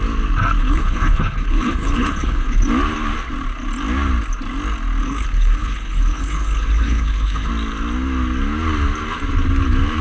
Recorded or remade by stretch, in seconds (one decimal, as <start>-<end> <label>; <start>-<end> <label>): 0.0-0.6 recorded; 0.6-2.6 remade; 2.6-5.0 recorded; 5.0-7.5 remade; 7.5-10.0 recorded